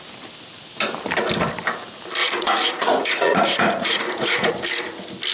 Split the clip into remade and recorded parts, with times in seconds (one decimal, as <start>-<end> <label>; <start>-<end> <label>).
0.0-2.2 recorded; 2.2-4.5 remade; 4.5-5.3 recorded